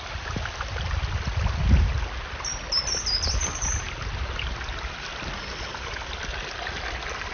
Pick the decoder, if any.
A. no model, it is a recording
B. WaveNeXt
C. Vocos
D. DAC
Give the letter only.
A